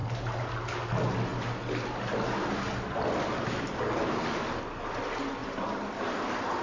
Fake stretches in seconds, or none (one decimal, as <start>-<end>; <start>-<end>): 5.4-6.0